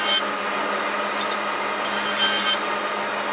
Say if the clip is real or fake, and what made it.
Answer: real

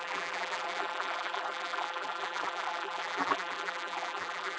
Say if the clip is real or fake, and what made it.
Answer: fake, vocoder, BigVGAN v2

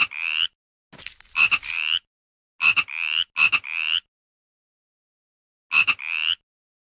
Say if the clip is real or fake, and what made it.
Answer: real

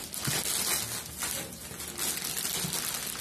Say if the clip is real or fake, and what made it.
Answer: real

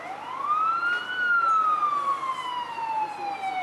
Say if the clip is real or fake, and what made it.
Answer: real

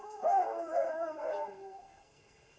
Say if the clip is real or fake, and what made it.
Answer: fake, codec, SNAC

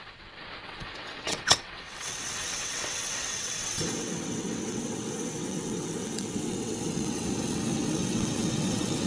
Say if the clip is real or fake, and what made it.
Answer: fake, vocoder, WaveNeXt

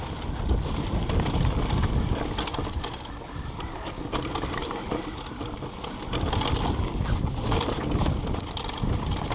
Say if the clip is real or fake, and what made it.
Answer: real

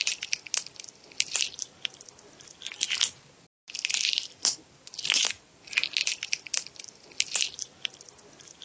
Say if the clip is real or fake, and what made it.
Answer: real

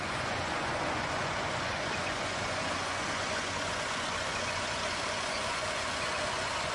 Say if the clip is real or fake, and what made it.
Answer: fake, vocoder, Vocos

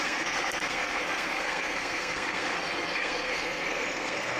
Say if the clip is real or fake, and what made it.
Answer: fake, codec, SNAC